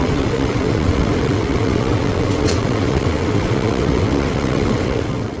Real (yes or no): no